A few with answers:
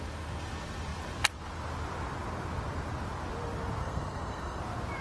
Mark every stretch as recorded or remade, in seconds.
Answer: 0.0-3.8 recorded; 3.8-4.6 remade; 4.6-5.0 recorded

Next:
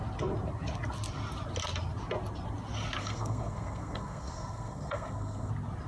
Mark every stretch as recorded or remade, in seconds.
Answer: 0.0-3.0 recorded; 3.0-5.5 remade; 5.5-5.9 recorded